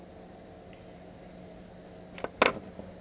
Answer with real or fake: real